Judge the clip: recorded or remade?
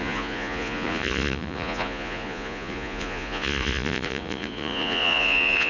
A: remade